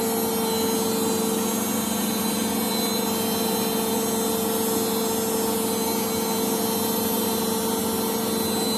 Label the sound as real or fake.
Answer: real